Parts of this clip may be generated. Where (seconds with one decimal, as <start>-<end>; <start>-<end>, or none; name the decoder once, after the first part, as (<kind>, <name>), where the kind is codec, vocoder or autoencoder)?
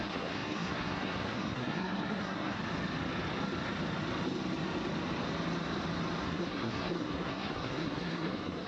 0.0-2.6 (codec, SNAC); 6.2-8.7